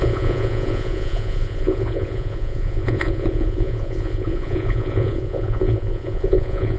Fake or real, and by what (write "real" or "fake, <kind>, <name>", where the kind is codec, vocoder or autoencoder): fake, vocoder, Vocos